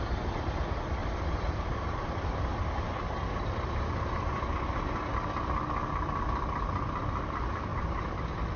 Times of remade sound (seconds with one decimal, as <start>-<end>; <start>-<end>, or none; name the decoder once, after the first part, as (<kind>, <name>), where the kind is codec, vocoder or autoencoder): 1.0-2.8 (vocoder, BigVGAN v2)